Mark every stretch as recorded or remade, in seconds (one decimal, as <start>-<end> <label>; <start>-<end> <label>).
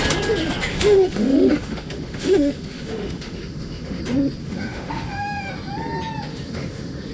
0.0-0.7 recorded; 0.7-4.0 remade; 4.0-4.4 recorded; 4.4-5.5 remade; 5.5-6.3 recorded; 6.3-7.1 remade